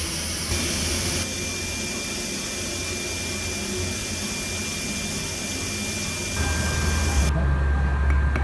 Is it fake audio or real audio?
real